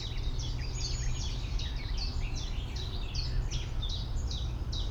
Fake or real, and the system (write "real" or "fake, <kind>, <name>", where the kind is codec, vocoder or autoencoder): real